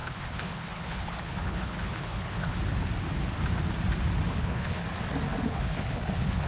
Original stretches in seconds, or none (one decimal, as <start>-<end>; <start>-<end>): 2.5-4.3; 4.8-5.5